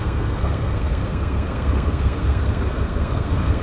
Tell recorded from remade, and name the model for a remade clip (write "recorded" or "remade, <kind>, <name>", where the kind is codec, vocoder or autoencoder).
remade, codec, SNAC